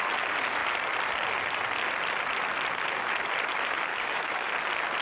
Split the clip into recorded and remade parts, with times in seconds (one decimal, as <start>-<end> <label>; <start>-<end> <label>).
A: 0.0-3.9 recorded; 3.9-4.5 remade; 4.5-5.0 recorded